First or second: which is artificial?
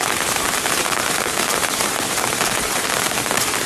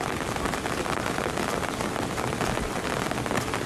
first